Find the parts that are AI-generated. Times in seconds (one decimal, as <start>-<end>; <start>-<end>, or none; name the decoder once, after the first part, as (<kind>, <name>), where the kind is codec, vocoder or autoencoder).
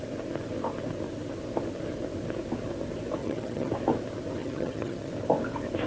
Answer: 3.2-3.7 (vocoder, HiFi-GAN); 4.4-5.1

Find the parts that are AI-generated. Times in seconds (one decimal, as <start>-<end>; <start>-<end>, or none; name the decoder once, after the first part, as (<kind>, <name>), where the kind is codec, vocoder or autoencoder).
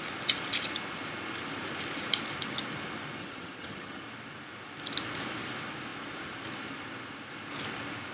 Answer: 3.2-4.0 (vocoder, HiFi-GAN)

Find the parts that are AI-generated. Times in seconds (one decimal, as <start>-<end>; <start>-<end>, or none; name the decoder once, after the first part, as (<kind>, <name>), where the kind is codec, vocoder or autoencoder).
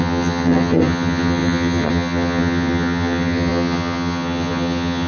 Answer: 0.0-5.1 (vocoder, HiFi-GAN)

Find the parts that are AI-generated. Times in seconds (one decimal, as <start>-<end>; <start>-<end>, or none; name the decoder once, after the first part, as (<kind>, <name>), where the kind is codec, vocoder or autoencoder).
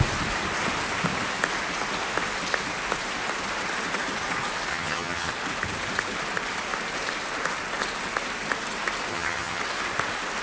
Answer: 4.7-5.3 (vocoder, HiFi-GAN); 9.1-9.6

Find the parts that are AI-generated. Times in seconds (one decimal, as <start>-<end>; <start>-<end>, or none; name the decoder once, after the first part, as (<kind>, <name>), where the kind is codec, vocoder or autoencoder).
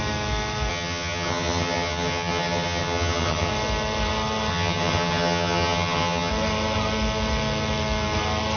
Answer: 0.7-3.5 (vocoder, HiFi-GAN); 4.5-6.3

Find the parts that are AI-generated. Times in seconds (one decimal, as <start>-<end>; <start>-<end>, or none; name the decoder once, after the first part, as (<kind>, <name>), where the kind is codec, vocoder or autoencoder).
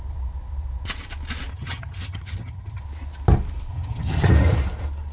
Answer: 1.5-2.8 (vocoder, HiFi-GAN); 3.7-4.3